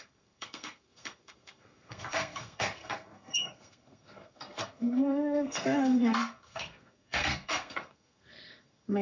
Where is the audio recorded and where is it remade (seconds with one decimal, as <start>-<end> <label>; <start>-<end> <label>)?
0.0-9.0 remade